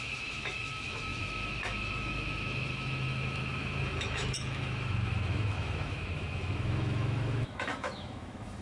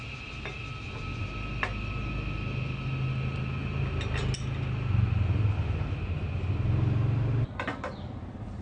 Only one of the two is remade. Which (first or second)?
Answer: first